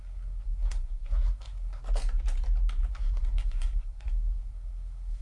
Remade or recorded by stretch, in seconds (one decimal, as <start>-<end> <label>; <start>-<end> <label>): 0.0-1.8 remade; 1.8-2.9 recorded; 2.9-5.2 remade